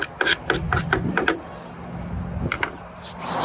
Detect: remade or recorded recorded